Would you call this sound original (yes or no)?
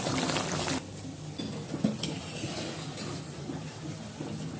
yes